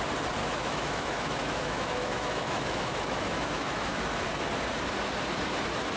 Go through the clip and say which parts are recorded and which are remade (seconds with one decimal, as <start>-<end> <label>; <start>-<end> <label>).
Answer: 0.0-0.4 recorded; 0.4-4.0 remade; 4.0-6.0 recorded